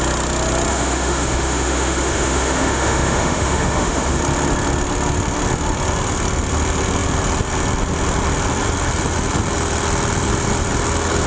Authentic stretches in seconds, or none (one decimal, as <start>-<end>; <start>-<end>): 0.0-0.7; 4.2-11.3